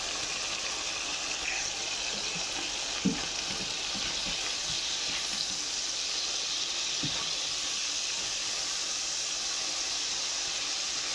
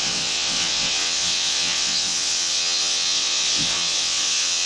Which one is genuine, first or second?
first